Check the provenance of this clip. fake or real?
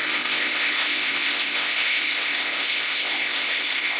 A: fake